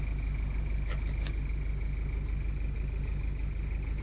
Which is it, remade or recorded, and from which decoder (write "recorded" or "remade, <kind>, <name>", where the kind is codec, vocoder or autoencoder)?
recorded